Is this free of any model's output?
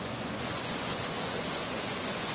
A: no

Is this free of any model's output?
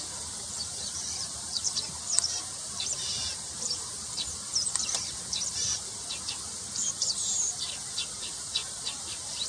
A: no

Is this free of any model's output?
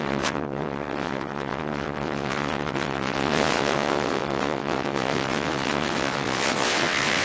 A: no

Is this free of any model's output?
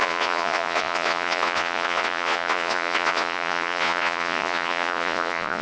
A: no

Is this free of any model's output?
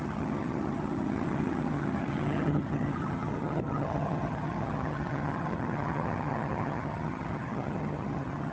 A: no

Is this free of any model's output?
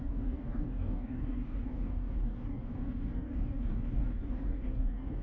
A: no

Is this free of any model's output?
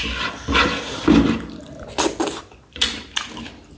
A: yes